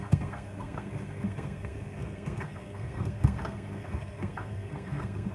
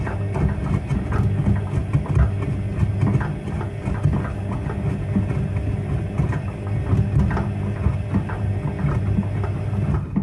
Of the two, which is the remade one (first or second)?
first